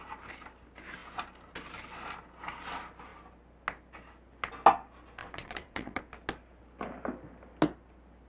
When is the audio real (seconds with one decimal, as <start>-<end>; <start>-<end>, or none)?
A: 0.0-5.2; 6.0-8.3